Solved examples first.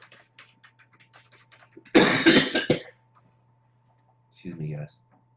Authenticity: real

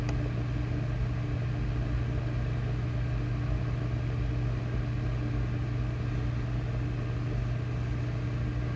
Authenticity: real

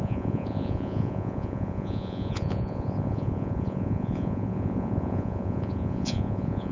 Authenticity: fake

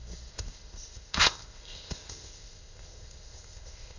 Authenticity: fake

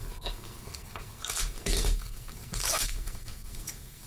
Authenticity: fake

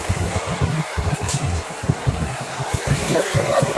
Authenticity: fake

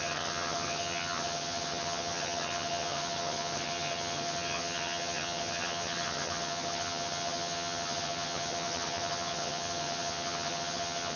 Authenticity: fake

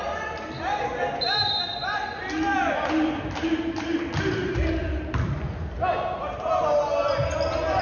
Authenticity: real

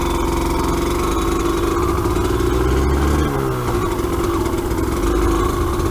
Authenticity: real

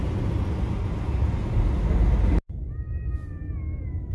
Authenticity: real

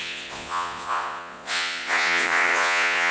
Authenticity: fake